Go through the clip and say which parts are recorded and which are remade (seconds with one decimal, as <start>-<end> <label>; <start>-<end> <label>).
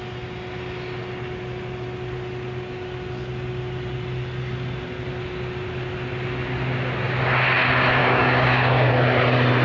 0.0-8.0 recorded; 8.0-8.9 remade; 8.9-9.6 recorded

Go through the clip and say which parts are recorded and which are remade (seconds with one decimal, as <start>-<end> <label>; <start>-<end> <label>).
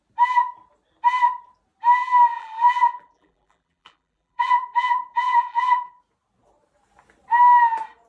0.0-2.3 recorded; 2.3-6.0 remade; 6.0-8.1 recorded